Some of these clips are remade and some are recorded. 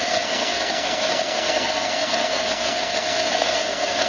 remade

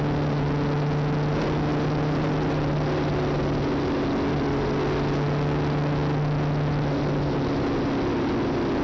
recorded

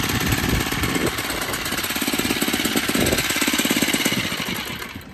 recorded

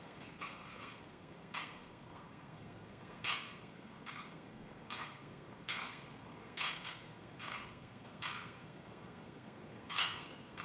remade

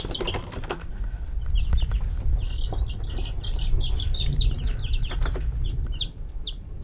recorded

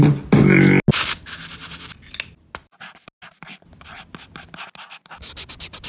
recorded